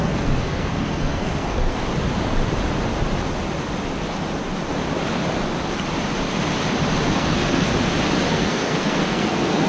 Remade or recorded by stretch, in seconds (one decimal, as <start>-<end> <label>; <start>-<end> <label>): 0.0-1.8 remade; 1.8-7.1 recorded; 7.1-7.7 remade; 7.7-8.3 recorded; 8.3-9.7 remade